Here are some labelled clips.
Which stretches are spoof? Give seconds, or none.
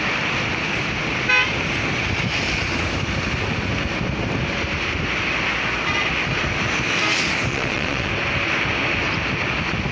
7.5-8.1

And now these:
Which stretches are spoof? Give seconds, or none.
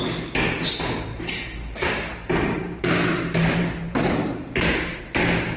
1.1-4.5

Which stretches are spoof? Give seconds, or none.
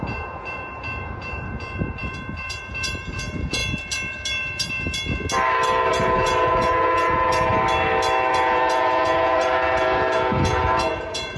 0.0-3.6; 5.9-7.5; 8.3-11.4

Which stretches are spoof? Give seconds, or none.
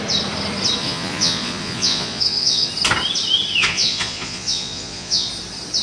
0.8-2.7; 3.6-5.3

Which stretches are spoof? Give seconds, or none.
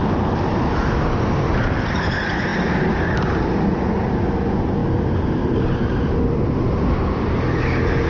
none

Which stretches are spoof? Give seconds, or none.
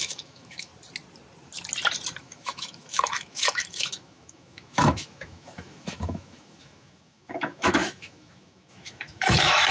0.0-0.7; 2.2-9.7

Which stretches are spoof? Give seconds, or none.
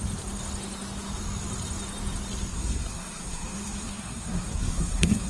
2.5-5.3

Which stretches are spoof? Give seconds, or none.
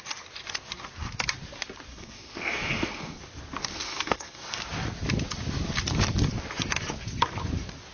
1.9-3.2; 3.7-4.6